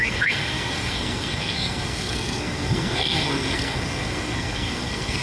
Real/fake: fake